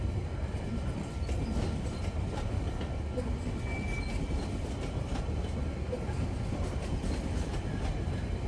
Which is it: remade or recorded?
recorded